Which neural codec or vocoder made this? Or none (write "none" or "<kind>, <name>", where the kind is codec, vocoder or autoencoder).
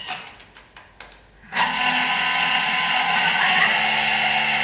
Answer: none